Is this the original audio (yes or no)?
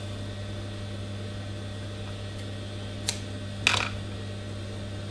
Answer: yes